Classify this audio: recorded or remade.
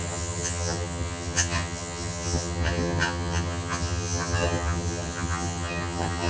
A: remade